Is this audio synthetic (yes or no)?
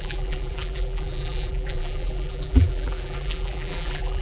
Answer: yes